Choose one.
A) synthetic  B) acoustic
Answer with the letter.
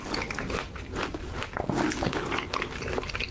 B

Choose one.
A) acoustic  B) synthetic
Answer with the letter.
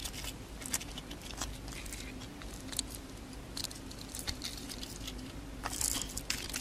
A